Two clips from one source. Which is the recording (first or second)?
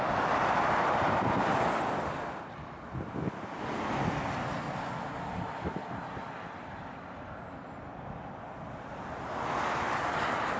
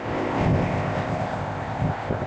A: first